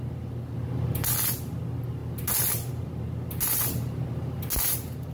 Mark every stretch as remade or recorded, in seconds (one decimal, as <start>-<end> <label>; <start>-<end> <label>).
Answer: 0.0-5.1 recorded